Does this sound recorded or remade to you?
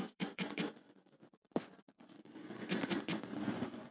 remade